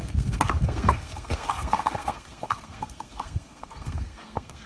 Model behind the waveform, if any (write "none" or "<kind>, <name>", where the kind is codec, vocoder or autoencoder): codec, SNAC